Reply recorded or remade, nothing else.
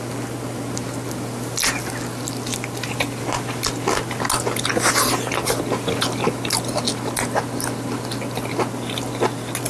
recorded